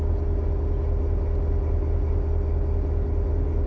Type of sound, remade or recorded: recorded